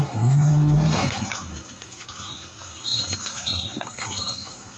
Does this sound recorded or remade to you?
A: remade